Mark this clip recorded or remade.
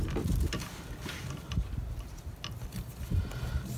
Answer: recorded